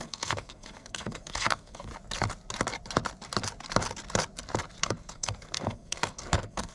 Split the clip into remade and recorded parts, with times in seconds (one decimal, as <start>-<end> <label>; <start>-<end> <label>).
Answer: 0.0-1.9 remade; 1.9-4.8 recorded; 4.8-6.7 remade